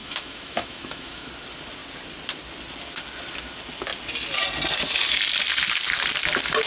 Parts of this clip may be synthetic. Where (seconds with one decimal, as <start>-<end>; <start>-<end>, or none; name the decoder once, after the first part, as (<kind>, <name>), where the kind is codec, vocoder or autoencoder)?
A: 0.0-1.3 (autoencoder, DAC-VAE)